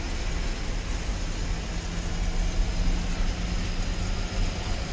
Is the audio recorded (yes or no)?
yes